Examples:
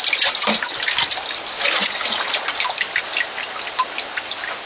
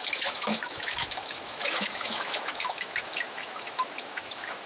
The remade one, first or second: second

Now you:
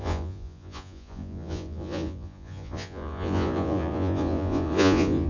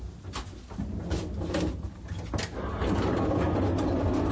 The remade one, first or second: first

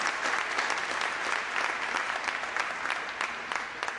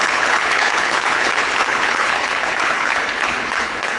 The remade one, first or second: second